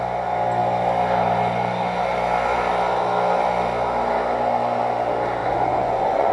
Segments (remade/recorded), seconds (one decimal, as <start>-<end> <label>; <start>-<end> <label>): 0.0-5.4 recorded; 5.4-6.3 remade